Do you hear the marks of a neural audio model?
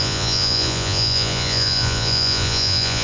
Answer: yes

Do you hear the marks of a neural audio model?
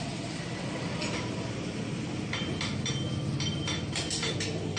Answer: no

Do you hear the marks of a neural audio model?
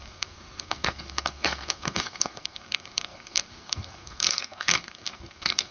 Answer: yes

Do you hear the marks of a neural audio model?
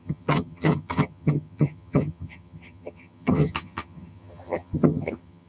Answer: yes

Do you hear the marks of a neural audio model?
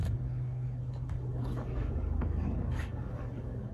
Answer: yes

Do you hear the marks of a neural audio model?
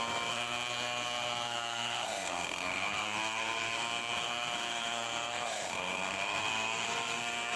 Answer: yes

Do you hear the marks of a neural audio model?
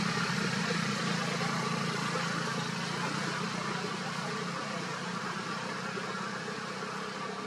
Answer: no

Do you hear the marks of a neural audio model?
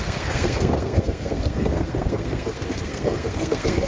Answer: yes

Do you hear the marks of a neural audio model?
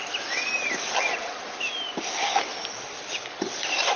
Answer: no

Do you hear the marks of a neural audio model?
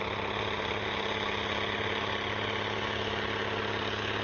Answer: no